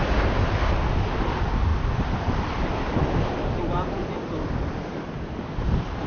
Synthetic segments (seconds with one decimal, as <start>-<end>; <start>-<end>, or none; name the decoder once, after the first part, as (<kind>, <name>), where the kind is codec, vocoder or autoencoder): none